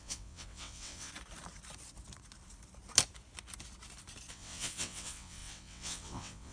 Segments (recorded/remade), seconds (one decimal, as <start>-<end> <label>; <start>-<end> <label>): 0.0-1.1 remade; 1.1-4.3 recorded; 4.3-6.5 remade